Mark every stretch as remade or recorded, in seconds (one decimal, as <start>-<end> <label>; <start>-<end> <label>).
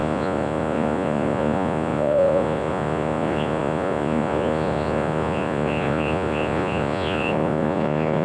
0.0-8.2 remade